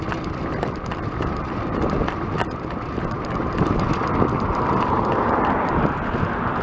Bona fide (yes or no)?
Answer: yes